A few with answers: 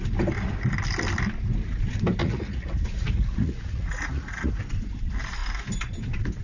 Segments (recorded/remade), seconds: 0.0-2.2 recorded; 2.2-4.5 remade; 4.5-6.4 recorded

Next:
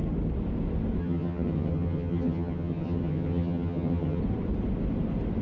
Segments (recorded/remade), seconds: 0.0-1.0 recorded; 1.0-4.2 remade; 4.2-5.4 recorded

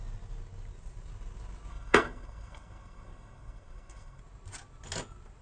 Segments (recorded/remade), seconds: 0.0-1.7 recorded; 1.7-4.2 remade; 4.2-5.4 recorded

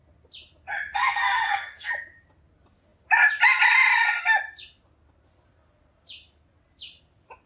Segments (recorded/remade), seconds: 0.0-1.0 recorded; 1.0-1.9 remade; 1.9-7.5 recorded

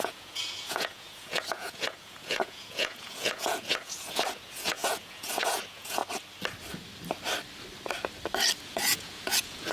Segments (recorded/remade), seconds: 0.0-6.0 remade; 6.0-8.6 recorded; 8.6-9.7 remade

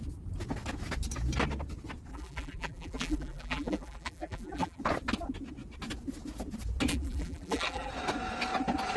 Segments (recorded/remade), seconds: 0.0-2.1 recorded; 2.1-4.8 remade; 4.8-6.9 recorded; 6.9-7.9 remade; 7.9-9.0 recorded

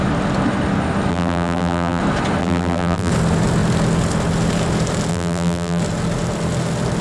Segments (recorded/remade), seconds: 0.0-1.1 recorded; 1.1-2.0 remade; 2.0-2.4 recorded; 2.4-3.1 remade; 3.1-5.1 recorded; 5.1-5.8 remade; 5.8-7.0 recorded

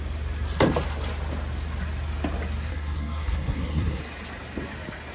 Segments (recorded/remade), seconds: 0.0-2.7 recorded; 2.7-4.0 remade; 4.0-5.1 recorded